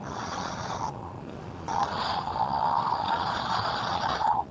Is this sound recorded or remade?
remade